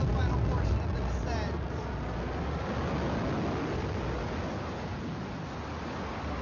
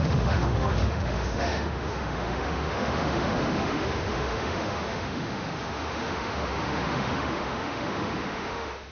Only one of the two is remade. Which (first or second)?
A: second